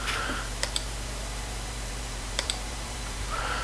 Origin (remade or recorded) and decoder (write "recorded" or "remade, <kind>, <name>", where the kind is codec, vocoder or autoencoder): remade, vocoder, BigVGAN v2